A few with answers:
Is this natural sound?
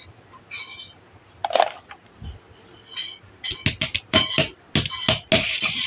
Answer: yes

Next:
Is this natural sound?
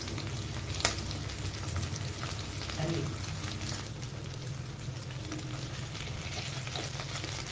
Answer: yes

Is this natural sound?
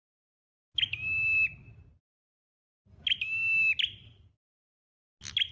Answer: yes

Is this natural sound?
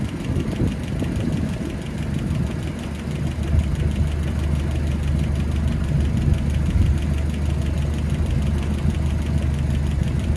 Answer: yes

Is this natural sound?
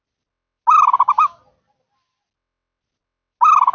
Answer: yes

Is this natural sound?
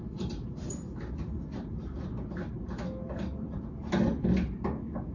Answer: yes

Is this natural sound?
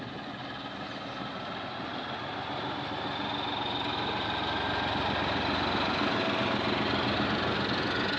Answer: yes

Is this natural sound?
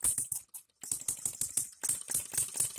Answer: yes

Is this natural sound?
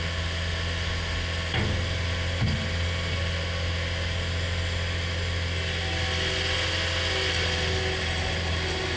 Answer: yes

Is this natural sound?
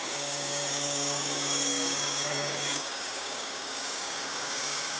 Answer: no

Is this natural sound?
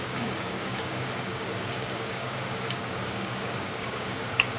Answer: no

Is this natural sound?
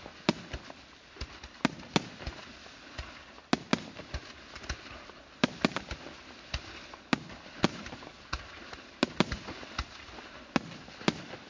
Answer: yes